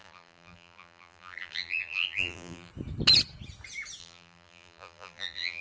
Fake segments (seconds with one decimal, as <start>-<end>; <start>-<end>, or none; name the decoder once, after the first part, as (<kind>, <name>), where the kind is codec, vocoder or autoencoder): 0.0-2.7 (vocoder, BigVGAN v2); 4.0-5.6